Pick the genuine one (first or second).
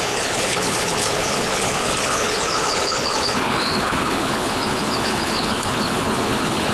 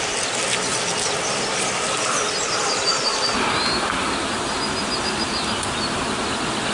second